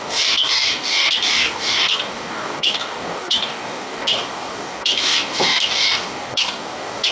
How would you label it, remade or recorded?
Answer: remade